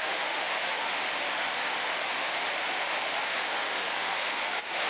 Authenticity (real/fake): fake